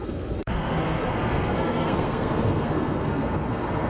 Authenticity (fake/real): fake